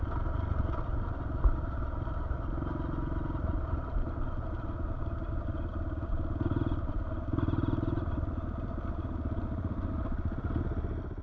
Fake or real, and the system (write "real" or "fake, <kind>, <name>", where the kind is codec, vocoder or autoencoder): real